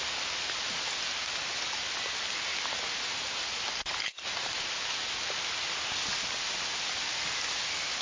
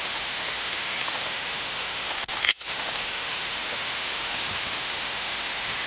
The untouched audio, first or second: first